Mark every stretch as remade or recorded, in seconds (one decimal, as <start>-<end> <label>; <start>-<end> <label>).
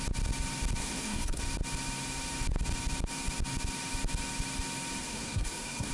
0.0-0.8 recorded; 0.8-1.4 remade; 1.4-5.0 recorded; 5.0-5.9 remade